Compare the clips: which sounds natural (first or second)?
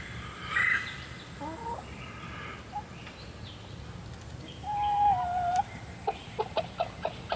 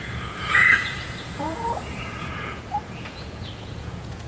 first